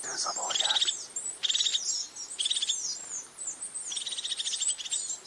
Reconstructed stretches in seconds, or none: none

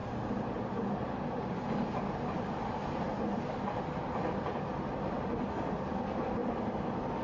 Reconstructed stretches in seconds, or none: none